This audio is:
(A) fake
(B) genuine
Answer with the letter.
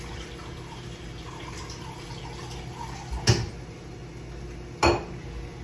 B